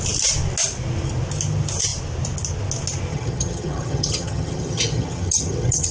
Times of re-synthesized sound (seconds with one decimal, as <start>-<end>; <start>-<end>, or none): 3.1-5.9